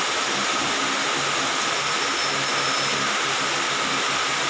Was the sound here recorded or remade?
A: recorded